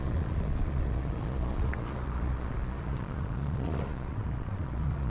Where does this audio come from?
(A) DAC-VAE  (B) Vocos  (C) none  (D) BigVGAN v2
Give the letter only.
B